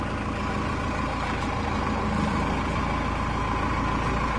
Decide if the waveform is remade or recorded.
recorded